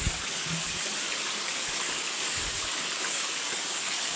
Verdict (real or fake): fake